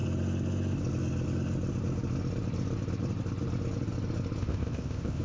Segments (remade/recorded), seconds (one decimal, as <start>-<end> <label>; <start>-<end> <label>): 0.0-4.4 recorded; 4.4-5.2 remade

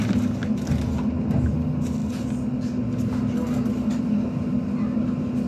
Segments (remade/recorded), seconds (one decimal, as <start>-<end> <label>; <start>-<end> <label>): 0.0-5.5 recorded

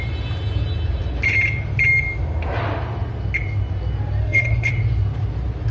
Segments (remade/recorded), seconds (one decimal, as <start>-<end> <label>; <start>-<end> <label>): 0.0-4.2 recorded; 4.2-4.7 remade; 4.7-5.7 recorded

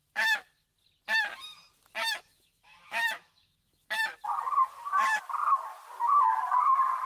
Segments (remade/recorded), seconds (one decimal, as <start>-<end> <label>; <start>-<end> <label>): 0.0-0.6 remade; 0.6-2.0 recorded; 2.0-4.4 remade; 4.4-7.1 recorded

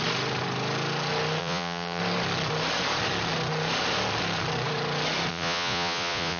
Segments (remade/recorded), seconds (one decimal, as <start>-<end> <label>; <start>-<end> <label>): 0.0-1.4 recorded; 1.4-2.0 remade; 2.0-5.3 recorded; 5.3-6.4 remade

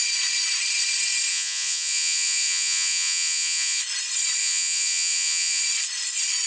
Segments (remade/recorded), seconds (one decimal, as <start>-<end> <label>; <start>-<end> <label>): 0.0-1.3 recorded; 1.3-3.8 remade; 3.8-4.4 recorded; 4.4-5.6 remade; 5.6-6.5 recorded

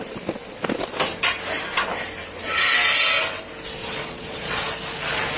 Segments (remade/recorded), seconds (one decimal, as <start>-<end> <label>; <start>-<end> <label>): 0.0-3.8 recorded; 3.8-4.7 remade; 4.7-5.4 recorded